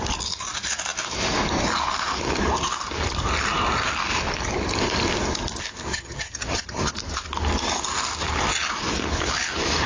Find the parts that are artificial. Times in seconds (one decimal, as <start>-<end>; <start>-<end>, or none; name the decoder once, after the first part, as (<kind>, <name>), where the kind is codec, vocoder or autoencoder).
5.9-6.9 (vocoder, HiFi-GAN)

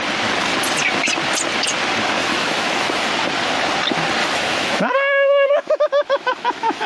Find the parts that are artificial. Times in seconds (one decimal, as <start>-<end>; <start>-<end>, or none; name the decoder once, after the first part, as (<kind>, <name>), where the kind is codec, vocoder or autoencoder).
2.2-3.1 (autoencoder, DAC-VAE); 4.2-6.9

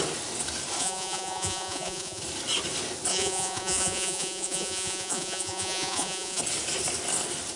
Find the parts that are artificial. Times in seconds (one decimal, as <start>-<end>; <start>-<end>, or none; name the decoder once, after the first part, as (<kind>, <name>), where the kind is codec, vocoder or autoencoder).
0.8-2.2 (vocoder, Vocos); 3.1-6.4